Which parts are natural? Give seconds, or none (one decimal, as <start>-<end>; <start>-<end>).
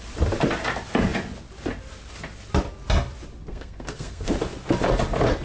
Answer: 0.0-3.5; 4.3-5.4